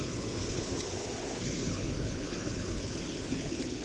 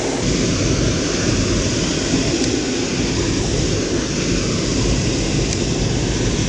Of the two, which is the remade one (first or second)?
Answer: first